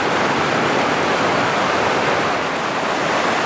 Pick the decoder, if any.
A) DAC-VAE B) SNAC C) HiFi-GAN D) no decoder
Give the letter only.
D